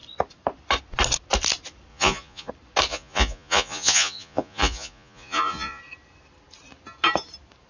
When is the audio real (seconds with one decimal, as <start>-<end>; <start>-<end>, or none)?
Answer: 0.0-1.9; 2.5-2.9; 5.8-7.7